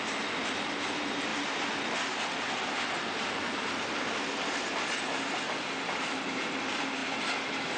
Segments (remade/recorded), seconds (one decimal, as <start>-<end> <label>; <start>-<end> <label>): 0.0-7.8 recorded